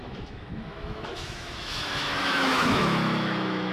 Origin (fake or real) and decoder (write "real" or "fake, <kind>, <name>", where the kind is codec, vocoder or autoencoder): fake, autoencoder, DAC-VAE